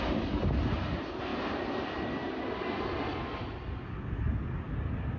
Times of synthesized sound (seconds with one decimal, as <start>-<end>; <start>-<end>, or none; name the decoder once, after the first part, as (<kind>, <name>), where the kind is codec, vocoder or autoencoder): 1.3-4.0 (vocoder, BigVGAN v2)